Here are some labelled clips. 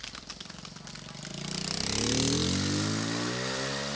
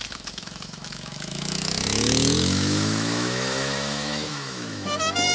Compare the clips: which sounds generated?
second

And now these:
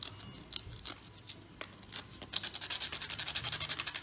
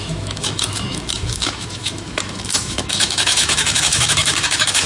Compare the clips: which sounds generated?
second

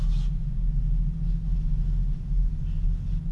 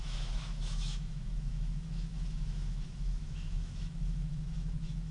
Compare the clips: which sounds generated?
second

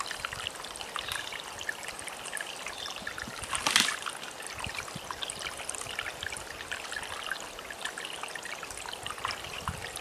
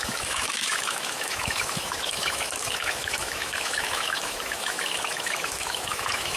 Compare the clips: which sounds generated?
second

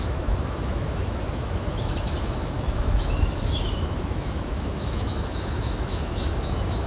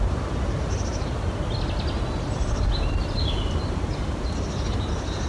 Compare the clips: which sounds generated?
first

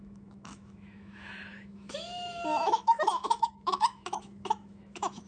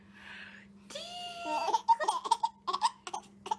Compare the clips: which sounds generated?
first